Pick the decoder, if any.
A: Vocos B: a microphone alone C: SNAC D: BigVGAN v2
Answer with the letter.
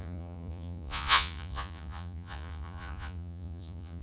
A